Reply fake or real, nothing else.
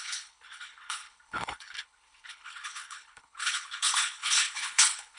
fake